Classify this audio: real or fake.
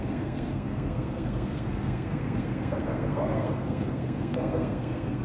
fake